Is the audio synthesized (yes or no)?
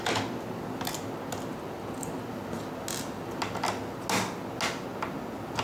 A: no